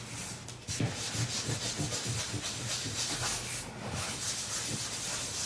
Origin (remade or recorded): recorded